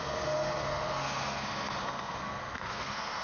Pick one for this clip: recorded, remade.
remade